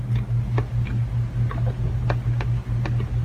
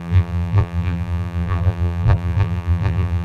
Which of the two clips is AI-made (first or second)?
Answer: second